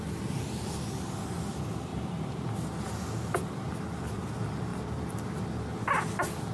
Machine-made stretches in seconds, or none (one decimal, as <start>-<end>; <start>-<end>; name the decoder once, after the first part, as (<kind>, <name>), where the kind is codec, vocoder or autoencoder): 1.9-2.8 (vocoder, BigVGAN v2); 4.7-5.4